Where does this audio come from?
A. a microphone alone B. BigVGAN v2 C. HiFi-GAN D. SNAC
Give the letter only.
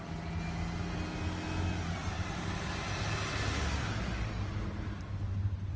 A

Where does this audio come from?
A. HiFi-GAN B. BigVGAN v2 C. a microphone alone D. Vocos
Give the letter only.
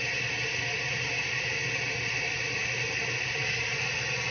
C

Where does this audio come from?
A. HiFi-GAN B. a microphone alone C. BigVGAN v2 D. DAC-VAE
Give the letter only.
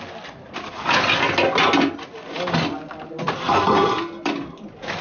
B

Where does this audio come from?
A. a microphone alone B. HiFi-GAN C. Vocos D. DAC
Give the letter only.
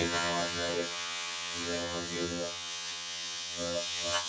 B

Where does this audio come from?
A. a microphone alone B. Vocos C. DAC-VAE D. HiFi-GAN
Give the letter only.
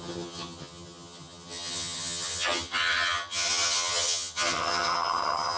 D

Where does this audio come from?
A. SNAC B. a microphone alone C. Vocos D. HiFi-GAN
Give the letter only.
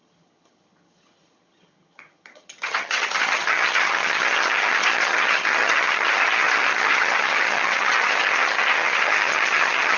D